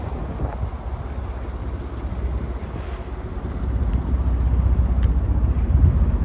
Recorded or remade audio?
recorded